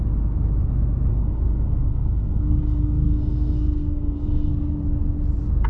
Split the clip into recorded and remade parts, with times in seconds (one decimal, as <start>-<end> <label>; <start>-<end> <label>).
0.0-1.1 recorded; 1.1-4.5 remade; 4.5-5.7 recorded